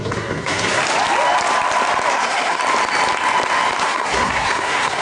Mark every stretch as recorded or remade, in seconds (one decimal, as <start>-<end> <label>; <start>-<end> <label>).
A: 0.0-0.8 remade; 0.8-2.1 recorded; 2.1-2.6 remade; 2.6-3.8 recorded; 3.8-5.0 remade